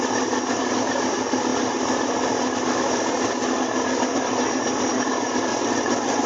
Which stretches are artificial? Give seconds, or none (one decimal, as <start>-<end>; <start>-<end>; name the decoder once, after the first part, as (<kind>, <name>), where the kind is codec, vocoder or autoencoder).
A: 5.5-6.3 (vocoder, WaveNeXt)